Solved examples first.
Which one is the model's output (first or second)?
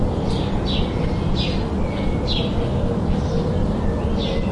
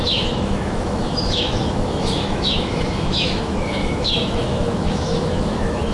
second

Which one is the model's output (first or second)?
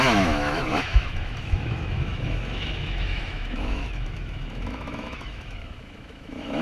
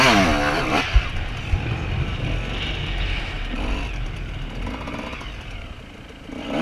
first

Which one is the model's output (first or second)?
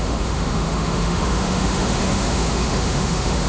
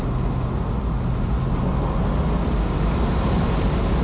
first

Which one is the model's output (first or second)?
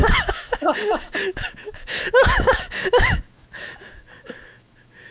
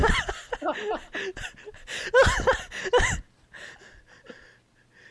first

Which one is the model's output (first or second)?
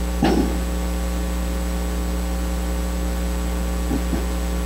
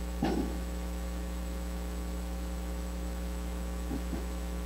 second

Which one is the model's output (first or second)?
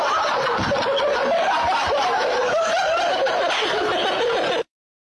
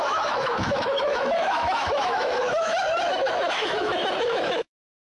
second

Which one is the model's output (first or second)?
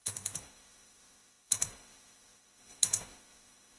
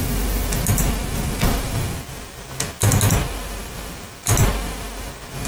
first